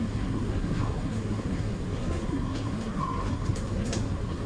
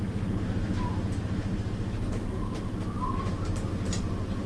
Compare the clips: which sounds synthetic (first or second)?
first